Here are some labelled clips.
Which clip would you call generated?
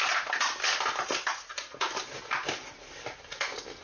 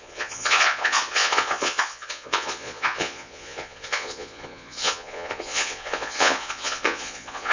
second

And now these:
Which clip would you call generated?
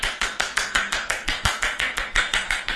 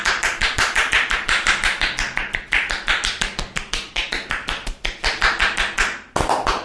first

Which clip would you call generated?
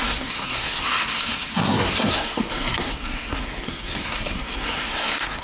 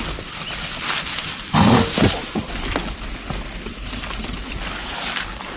first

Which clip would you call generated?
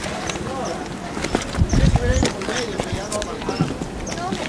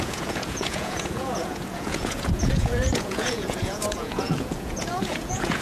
second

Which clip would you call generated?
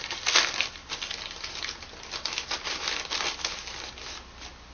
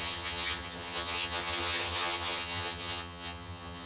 second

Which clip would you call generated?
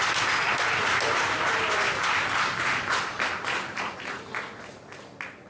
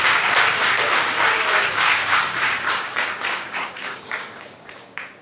second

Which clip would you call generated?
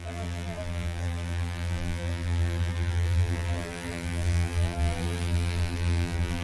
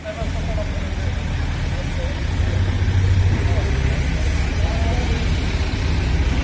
first